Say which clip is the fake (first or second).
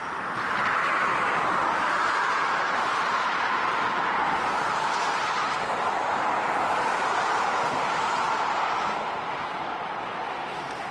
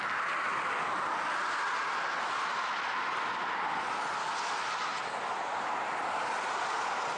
first